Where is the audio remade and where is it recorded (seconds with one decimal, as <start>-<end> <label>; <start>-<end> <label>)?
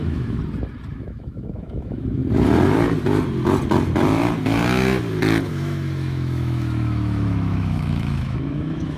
0.0-0.4 remade; 0.4-0.9 recorded; 0.9-2.2 remade; 2.2-5.5 recorded; 5.5-9.0 remade